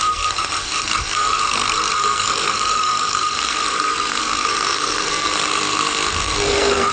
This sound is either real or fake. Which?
fake